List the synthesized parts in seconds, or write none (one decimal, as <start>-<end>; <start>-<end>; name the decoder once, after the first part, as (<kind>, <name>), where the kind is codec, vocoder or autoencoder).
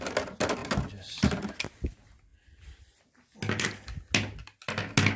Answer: none